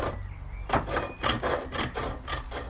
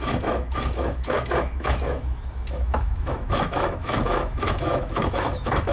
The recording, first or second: first